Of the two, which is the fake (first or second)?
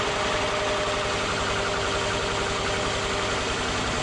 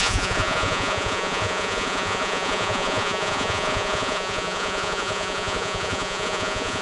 second